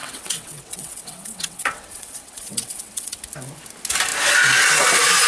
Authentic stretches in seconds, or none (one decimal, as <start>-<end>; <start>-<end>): 3.2-5.3